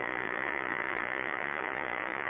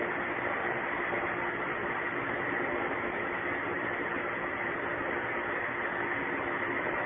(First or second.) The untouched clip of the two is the second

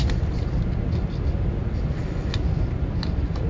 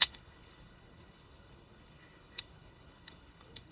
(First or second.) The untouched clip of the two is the first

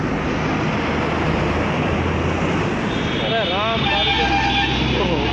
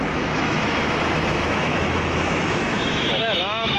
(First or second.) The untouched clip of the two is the first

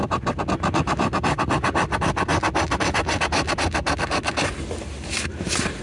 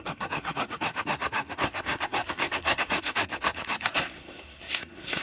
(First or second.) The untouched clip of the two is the first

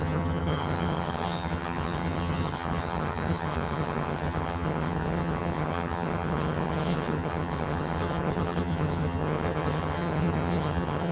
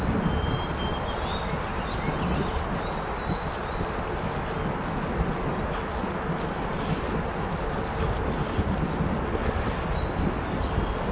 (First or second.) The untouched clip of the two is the second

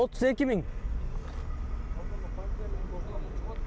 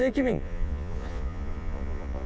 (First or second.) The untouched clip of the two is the first